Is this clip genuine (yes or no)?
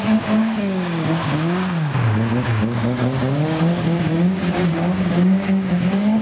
no